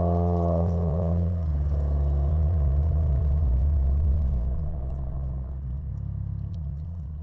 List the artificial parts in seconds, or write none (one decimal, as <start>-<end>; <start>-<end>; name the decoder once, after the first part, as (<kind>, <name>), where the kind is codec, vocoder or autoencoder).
0.0-1.5 (vocoder, Vocos); 2.3-5.9; 6.5-7.2